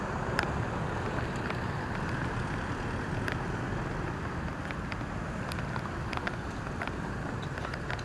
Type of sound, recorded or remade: recorded